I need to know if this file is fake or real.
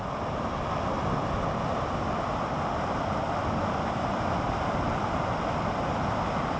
real